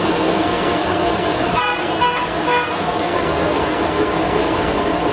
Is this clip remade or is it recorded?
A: remade